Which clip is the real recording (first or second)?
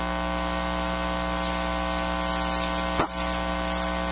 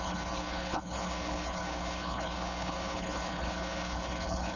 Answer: first